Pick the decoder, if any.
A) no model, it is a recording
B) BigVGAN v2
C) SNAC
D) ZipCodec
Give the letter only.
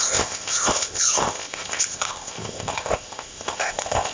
D